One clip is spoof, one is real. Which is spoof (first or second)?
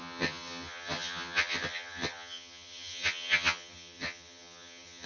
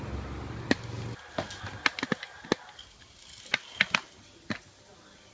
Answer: first